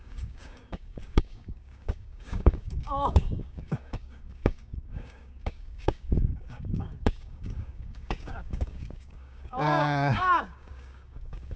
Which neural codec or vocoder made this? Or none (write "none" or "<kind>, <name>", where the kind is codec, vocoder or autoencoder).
codec, DAC